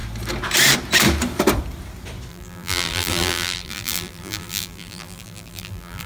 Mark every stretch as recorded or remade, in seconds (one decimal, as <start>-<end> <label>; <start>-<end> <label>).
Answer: 0.0-2.3 recorded; 2.3-6.1 remade

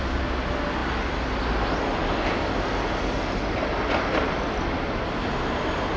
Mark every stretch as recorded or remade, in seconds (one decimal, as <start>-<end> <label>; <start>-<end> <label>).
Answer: 0.0-6.0 recorded

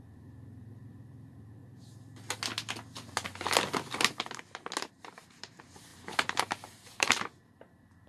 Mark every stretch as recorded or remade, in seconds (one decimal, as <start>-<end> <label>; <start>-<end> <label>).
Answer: 0.0-1.6 remade; 1.6-4.9 recorded; 4.9-5.9 remade; 5.9-6.4 recorded; 6.4-8.1 remade

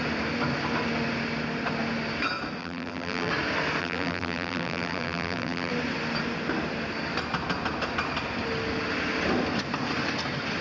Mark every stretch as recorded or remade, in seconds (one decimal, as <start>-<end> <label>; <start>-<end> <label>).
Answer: 0.0-2.6 recorded; 2.6-3.3 remade; 3.3-3.8 recorded; 3.8-5.7 remade; 5.7-10.6 recorded